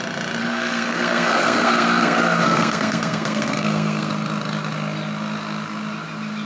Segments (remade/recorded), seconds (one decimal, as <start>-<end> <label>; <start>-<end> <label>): 0.0-0.4 recorded; 0.4-4.1 remade; 4.1-6.5 recorded

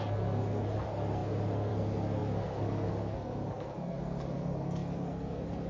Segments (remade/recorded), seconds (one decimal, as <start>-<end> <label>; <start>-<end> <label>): 0.0-5.7 remade

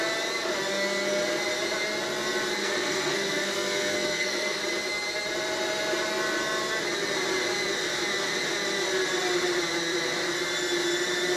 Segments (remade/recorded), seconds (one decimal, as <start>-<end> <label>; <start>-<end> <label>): 0.0-2.6 recorded; 2.6-4.6 remade; 4.6-11.4 recorded

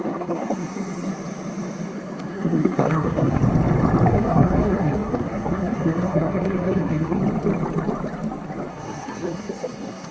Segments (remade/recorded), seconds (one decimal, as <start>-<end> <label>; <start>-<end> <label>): 0.0-1.1 remade; 1.1-2.3 recorded; 2.3-3.4 remade; 3.4-4.1 recorded; 4.1-7.2 remade; 7.2-8.7 recorded; 8.7-10.1 remade

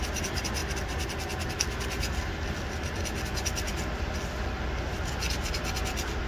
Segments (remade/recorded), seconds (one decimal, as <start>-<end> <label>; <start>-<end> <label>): 0.0-6.3 recorded